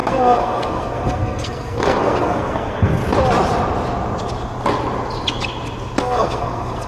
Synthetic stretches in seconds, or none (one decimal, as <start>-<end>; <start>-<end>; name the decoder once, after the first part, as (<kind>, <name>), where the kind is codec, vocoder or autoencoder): 0.0-3.0 (codec, SNAC); 6.0-6.9